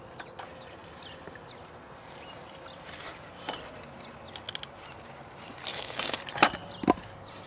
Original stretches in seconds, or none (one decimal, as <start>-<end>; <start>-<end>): 0.0-5.7; 6.2-7.5